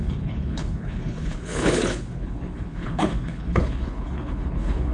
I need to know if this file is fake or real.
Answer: fake